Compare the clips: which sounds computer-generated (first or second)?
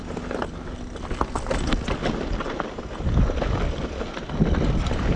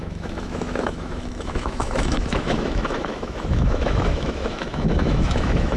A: second